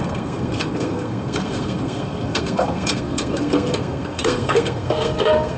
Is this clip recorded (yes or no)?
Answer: no